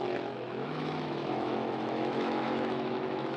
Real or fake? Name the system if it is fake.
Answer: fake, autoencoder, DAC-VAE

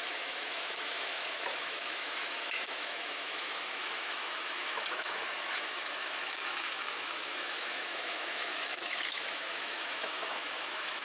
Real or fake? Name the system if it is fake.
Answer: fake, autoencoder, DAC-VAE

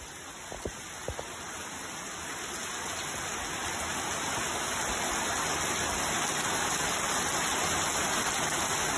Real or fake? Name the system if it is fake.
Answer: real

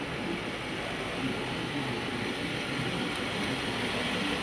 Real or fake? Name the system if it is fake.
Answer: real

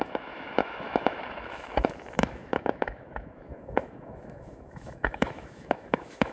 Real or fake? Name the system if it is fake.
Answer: fake, autoencoder, DAC-VAE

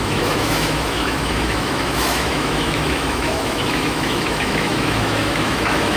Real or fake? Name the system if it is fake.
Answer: fake, autoencoder, DAC-VAE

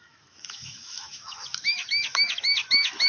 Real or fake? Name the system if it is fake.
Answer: fake, autoencoder, DAC-VAE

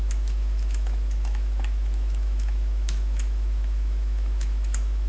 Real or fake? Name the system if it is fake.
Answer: fake, autoencoder, DAC-VAE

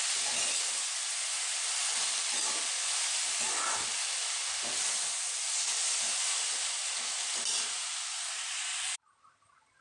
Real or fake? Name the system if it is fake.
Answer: real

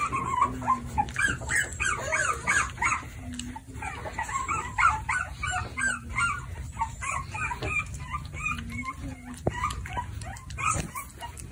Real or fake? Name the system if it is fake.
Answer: real